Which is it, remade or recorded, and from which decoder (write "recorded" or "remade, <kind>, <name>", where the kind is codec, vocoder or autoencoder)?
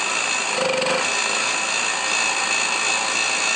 recorded